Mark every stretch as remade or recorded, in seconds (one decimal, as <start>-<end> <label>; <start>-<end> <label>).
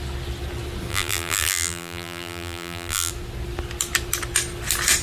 0.0-0.9 recorded; 0.9-3.1 remade; 3.1-5.0 recorded